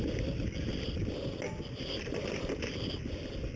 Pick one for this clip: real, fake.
real